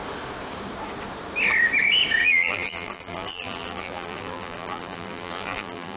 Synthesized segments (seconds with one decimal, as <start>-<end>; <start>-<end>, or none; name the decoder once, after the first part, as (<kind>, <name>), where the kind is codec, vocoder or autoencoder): 2.2-6.0 (vocoder, BigVGAN v2)